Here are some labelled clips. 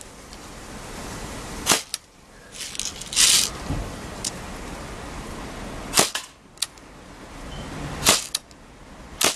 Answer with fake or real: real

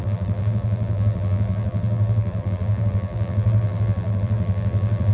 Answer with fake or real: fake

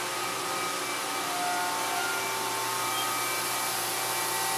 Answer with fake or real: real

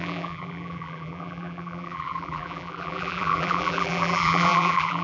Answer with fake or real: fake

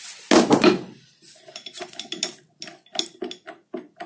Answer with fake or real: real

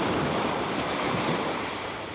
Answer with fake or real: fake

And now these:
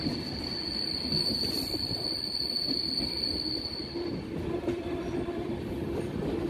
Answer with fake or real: fake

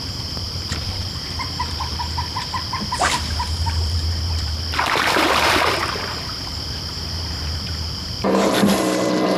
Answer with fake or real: fake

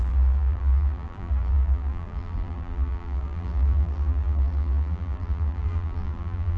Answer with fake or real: fake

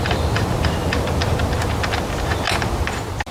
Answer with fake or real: real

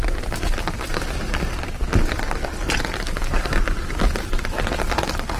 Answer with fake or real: real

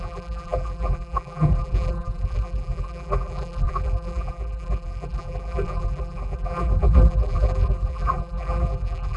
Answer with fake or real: fake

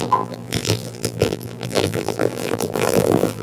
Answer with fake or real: fake